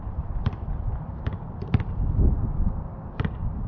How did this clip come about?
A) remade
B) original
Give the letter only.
B